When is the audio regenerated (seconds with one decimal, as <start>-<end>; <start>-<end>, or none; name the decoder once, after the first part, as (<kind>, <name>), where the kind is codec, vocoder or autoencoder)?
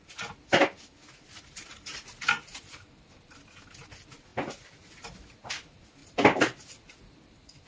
1.9-3.3 (vocoder, BigVGAN v2); 6.0-7.0